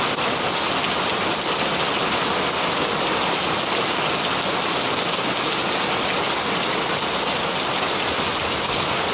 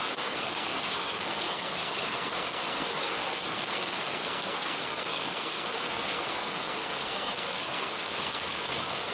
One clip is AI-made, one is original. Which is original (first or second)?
first